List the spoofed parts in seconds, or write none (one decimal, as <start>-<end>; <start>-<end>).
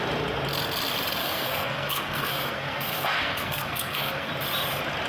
1.2-4.3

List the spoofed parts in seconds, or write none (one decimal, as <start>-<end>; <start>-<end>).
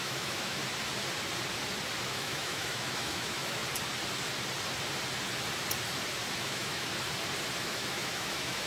0.0-0.6; 2.0-3.6; 6.4-6.9; 7.6-8.7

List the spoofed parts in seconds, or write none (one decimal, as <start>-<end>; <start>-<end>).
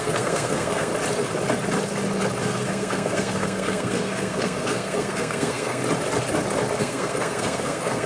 0.0-0.9; 2.4-5.8; 6.8-8.1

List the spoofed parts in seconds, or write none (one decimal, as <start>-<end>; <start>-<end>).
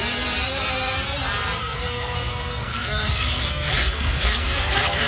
1.6-5.1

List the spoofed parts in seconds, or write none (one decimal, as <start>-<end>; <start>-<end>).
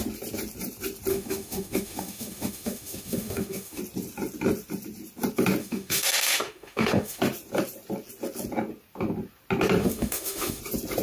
1.1-3.8; 5.6-7.2; 9.8-10.6